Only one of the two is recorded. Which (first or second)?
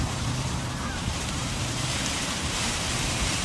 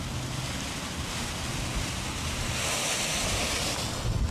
second